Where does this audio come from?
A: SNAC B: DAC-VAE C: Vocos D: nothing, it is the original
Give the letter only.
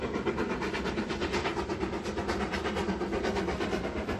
D